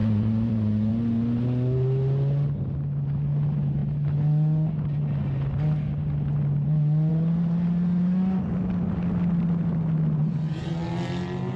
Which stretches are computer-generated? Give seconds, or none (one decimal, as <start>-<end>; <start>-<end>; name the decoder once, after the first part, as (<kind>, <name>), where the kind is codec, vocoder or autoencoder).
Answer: 0.0-0.9 (vocoder, Vocos); 10.2-10.7